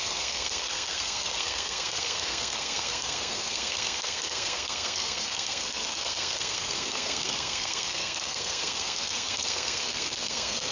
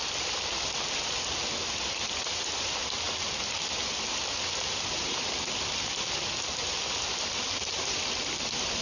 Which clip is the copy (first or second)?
first